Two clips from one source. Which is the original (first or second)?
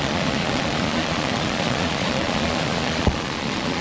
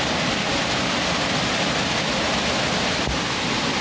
second